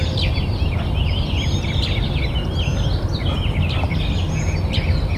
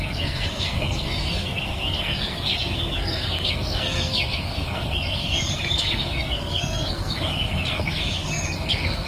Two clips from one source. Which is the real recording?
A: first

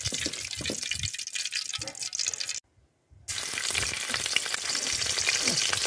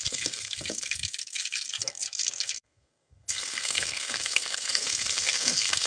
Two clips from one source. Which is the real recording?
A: first